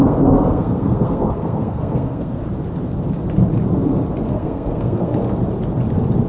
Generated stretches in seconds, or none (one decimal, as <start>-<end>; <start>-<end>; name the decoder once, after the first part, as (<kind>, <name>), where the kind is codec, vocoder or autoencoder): 0.0-2.4 (codec, SNAC); 4.3-5.1